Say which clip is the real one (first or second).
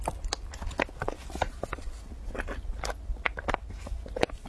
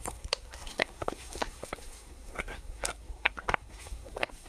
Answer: first